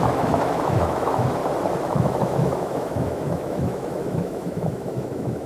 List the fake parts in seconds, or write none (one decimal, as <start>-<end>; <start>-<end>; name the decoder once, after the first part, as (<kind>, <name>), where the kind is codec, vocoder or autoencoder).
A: 0.0-1.4 (autoencoder, DAC-VAE); 1.9-5.5